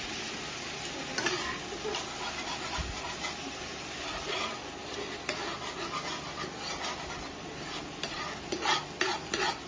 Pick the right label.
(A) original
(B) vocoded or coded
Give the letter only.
A